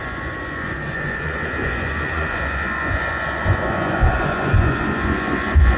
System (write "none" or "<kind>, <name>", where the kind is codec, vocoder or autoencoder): vocoder, Vocos